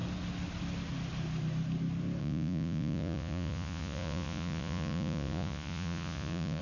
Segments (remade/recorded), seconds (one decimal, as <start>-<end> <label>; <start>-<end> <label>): 0.0-2.2 recorded; 2.2-6.6 remade